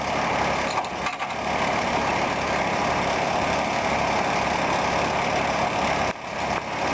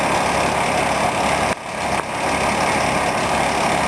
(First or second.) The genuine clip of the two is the second